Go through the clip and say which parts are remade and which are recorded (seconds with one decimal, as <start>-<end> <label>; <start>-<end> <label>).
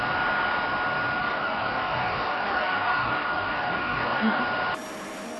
0.0-1.2 recorded; 1.2-4.4 remade; 4.4-5.4 recorded